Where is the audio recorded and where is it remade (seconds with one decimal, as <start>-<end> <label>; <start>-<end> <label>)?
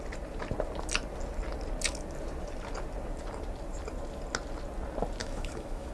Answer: 0.0-5.2 recorded; 5.2-5.9 remade